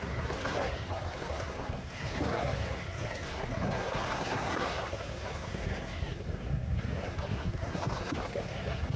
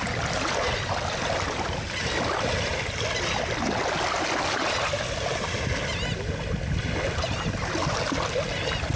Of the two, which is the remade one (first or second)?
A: first